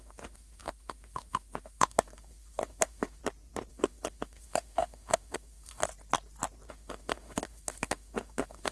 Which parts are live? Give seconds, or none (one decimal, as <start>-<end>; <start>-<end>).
3.2-3.7; 5.9-6.7